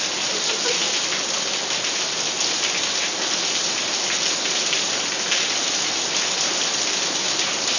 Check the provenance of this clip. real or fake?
real